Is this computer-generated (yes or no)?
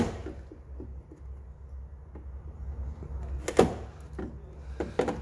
no